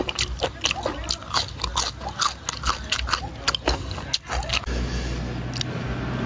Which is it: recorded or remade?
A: recorded